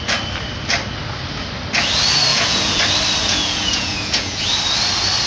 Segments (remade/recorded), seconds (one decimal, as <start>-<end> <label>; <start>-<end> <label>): 0.0-2.3 recorded; 2.3-2.8 remade; 2.8-3.2 recorded; 3.2-4.4 remade; 4.4-5.3 recorded